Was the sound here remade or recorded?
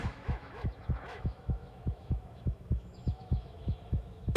remade